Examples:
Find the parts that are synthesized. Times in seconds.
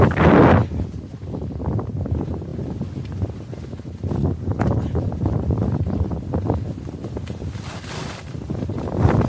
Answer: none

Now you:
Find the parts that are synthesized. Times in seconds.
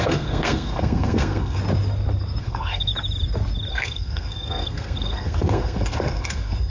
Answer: 0.0-1.6; 2.4-2.9; 3.7-6.7